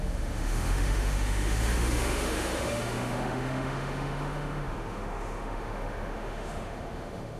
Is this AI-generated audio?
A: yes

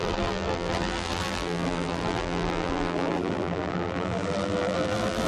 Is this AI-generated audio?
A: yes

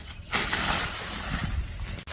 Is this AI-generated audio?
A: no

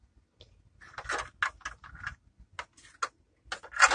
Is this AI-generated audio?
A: no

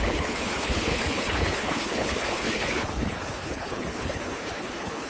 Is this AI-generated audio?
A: yes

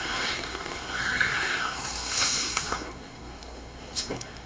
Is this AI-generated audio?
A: yes